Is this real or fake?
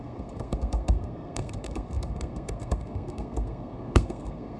fake